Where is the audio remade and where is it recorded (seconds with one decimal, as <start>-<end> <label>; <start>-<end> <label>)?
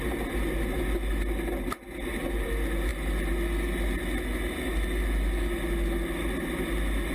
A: 0.0-7.1 recorded